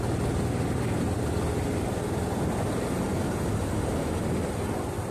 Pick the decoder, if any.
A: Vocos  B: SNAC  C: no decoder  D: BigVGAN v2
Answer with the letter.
C